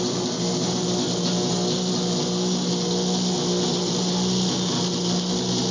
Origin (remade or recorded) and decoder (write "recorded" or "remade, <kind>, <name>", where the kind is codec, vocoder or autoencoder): recorded